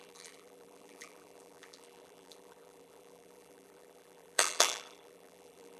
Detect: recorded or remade remade